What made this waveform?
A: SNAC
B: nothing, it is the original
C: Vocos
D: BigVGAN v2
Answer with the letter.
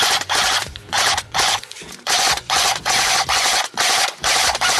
C